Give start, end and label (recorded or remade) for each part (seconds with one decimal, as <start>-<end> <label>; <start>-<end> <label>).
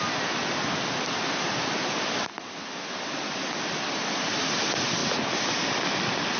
0.0-6.4 recorded